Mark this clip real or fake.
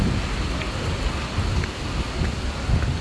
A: real